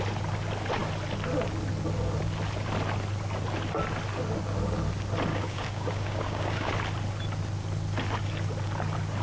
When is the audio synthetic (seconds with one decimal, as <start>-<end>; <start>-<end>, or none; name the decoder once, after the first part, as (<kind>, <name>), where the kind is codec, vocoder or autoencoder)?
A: 5.3-6.7 (codec, DAC)